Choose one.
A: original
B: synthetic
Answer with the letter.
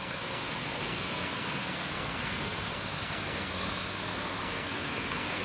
B